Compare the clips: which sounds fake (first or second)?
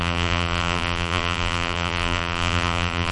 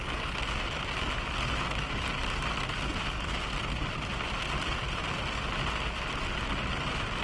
first